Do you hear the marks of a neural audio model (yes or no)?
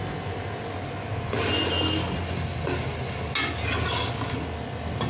no